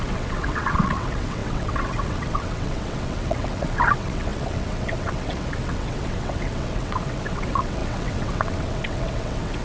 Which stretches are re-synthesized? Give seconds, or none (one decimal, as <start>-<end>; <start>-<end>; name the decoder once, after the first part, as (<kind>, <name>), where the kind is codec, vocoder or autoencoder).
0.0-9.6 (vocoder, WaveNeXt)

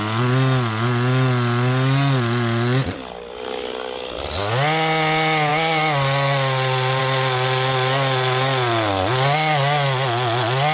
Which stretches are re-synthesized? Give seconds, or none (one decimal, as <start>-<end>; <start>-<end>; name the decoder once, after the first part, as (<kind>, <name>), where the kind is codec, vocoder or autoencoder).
none

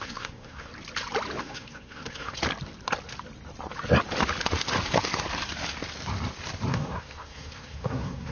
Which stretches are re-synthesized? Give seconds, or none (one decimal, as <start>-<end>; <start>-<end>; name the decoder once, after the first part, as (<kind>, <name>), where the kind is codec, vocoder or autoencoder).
0.0-0.7 (codec, SNAC); 1.4-2.4; 6.7-8.3

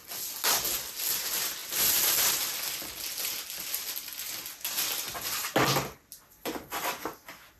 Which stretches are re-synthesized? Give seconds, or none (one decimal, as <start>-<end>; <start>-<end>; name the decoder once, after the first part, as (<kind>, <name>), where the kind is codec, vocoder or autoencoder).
none

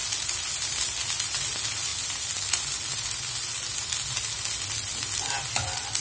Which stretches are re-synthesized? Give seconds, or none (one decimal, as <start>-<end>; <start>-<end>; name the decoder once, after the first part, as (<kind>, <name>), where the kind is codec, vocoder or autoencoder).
none

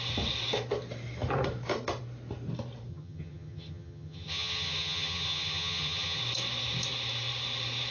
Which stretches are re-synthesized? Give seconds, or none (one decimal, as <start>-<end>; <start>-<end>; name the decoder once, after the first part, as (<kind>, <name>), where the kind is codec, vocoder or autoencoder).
2.9-6.2 (vocoder, HiFi-GAN)

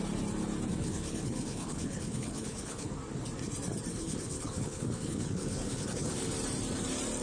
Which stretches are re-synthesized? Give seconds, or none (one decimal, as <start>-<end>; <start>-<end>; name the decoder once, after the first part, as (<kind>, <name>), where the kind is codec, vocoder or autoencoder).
0.7-2.9 (codec, HILCodec); 3.9-6.3

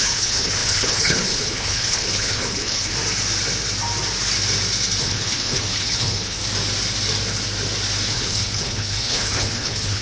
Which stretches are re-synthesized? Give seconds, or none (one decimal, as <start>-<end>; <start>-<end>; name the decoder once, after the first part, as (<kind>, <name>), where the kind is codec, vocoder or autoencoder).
0.0-2.9 (codec, HILCodec); 5.0-6.4; 8.1-10.0